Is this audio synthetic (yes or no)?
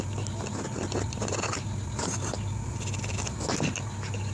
no